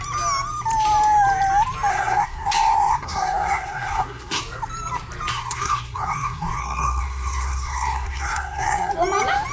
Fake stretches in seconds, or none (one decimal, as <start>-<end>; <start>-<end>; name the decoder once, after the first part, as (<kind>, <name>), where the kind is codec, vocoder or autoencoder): 1.9-4.4 (codec, SNAC); 5.3-8.9

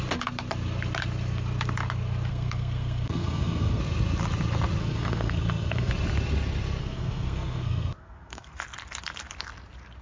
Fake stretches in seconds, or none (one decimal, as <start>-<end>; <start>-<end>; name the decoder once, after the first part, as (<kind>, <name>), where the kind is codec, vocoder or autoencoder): 2.3-3.8 (codec, SNAC); 4.8-5.9; 6.8-8.5

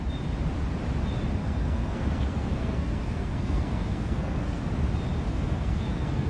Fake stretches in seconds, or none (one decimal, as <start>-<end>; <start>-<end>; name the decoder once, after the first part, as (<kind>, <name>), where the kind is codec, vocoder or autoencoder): 1.4-4.6 (codec, SNAC); 5.3-6.3

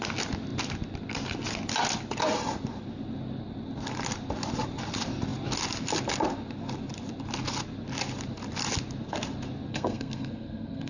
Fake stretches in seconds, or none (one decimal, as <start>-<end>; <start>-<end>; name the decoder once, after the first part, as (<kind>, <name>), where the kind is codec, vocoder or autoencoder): 9.7-10.9 (codec, SNAC)